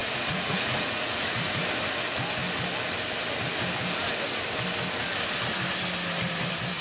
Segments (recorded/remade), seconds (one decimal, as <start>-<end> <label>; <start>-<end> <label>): 0.0-1.6 remade; 1.6-6.8 recorded